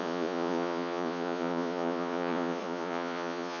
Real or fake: fake